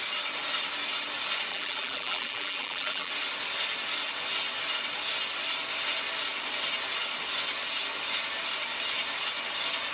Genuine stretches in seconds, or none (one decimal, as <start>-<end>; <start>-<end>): 0.0-1.5; 3.1-9.9